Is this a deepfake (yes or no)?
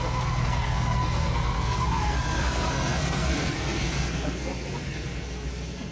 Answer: yes